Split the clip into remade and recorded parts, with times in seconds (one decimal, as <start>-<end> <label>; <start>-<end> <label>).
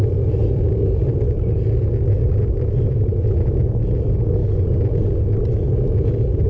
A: 0.0-3.1 remade; 3.1-3.6 recorded; 3.6-4.4 remade; 4.4-6.1 recorded; 6.1-6.5 remade